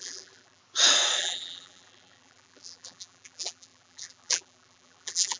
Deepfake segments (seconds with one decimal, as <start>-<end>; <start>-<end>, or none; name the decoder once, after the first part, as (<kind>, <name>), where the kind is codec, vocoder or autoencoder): 0.0-0.6 (vocoder, BigVGAN v2); 1.2-5.4